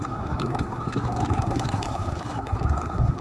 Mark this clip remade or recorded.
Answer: remade